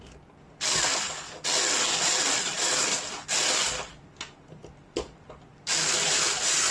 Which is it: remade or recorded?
recorded